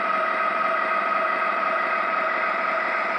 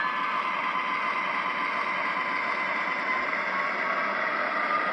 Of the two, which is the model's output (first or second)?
first